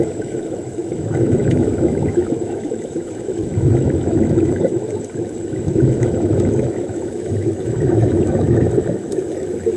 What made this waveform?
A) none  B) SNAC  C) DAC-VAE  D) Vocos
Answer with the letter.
C